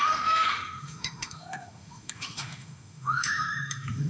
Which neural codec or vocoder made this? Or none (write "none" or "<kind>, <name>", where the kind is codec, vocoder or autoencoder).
autoencoder, DAC-VAE